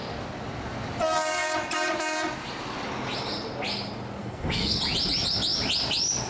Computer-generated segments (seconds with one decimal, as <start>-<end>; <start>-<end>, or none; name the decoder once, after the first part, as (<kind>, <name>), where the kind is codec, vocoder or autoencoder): 4.2-4.8 (codec, SNAC)